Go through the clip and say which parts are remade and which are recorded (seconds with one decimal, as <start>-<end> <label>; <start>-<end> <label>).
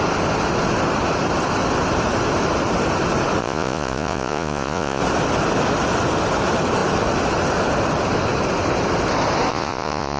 0.0-3.4 recorded; 3.4-5.0 remade; 5.0-9.5 recorded; 9.5-10.2 remade